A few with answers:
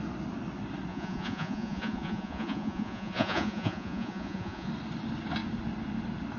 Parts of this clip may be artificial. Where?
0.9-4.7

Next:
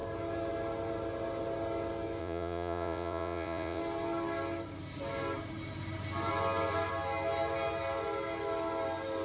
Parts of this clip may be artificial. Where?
2.2-3.8

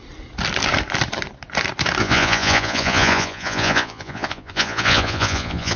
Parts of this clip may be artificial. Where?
2.0-5.8